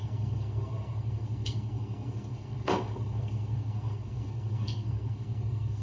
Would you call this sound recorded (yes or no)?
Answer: no